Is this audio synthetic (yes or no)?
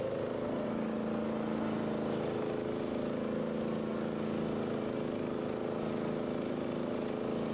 no